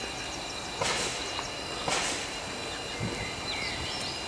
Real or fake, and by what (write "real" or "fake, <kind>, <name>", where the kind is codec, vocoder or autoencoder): real